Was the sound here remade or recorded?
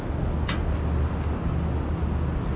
recorded